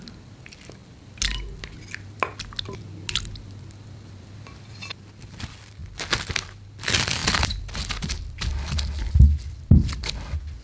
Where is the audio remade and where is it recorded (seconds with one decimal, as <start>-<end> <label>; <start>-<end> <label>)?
0.0-10.6 recorded